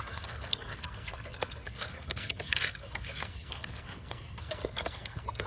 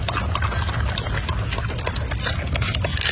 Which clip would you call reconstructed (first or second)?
first